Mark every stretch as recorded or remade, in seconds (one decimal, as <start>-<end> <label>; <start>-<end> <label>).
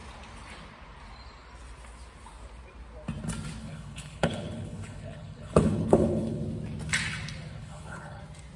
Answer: 0.0-3.6 recorded; 3.6-6.4 remade; 6.4-7.5 recorded; 7.5-8.2 remade; 8.2-8.6 recorded